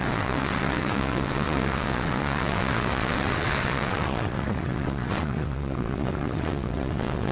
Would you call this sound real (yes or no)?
no